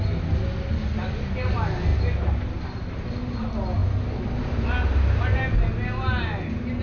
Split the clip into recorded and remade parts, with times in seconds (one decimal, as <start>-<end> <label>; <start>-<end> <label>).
0.0-6.8 recorded